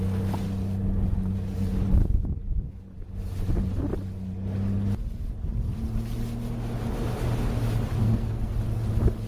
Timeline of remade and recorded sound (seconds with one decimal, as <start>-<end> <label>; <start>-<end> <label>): 0.0-8.0 recorded; 8.0-8.5 remade; 8.5-9.3 recorded